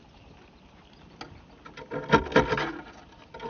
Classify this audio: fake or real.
real